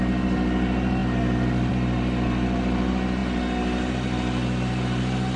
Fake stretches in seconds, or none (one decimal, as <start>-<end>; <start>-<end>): none

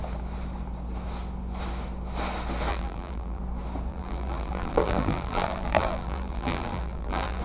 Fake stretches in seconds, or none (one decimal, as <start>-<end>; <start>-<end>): 2.7-3.4; 3.9-7.4

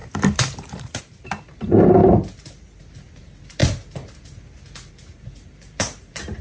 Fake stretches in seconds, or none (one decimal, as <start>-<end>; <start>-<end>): 0.0-2.0; 2.9-3.6; 4.9-6.4

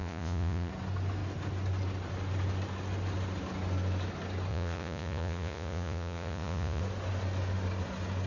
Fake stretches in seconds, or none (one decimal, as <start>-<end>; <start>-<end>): 0.0-0.7; 4.5-6.8